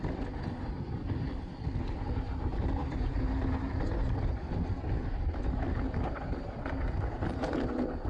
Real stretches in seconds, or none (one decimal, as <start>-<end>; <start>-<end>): 0.0-8.1